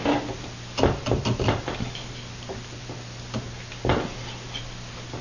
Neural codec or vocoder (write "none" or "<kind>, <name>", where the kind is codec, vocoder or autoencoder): none